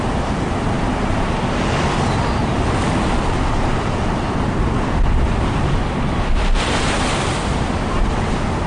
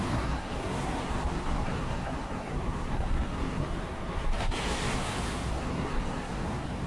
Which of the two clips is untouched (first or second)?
first